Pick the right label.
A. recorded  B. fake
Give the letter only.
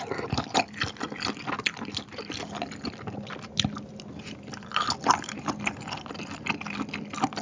A